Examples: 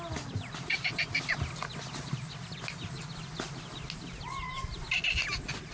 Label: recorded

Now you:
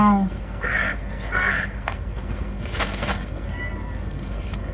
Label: remade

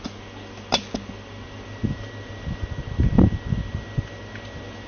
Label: recorded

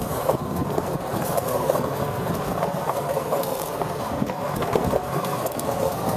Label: remade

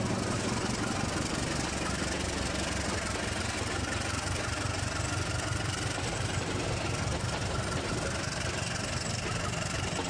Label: recorded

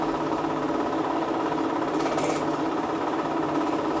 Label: recorded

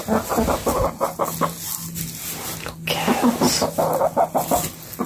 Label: recorded